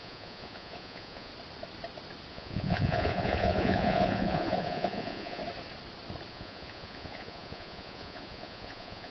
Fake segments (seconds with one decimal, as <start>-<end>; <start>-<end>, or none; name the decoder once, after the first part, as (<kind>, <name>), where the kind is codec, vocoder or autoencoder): 0.0-1.3 (vocoder, Vocos); 2.3-5.4; 6.3-9.1